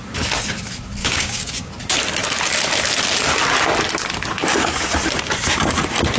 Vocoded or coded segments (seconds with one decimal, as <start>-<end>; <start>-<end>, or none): 1.0-1.7